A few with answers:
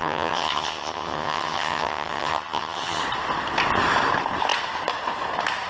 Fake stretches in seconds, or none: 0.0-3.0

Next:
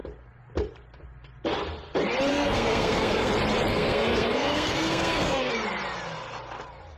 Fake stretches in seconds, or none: 2.3-3.3; 3.7-5.5

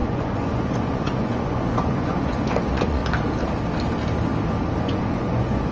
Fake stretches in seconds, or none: 0.0-3.0; 4.8-5.7

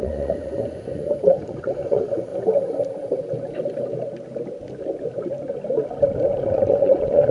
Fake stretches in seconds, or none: 0.0-2.3; 6.5-7.3

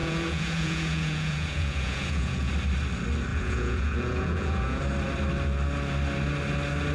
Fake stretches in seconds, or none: 0.0-2.5; 3.3-4.8

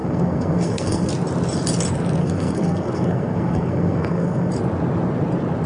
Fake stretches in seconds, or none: 0.0-1.1; 2.2-4.5

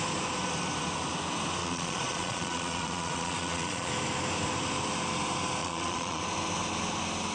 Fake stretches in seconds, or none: 1.6-3.9; 5.6-6.2